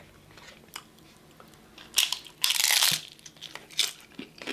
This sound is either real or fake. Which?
real